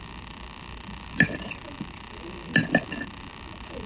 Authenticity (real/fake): real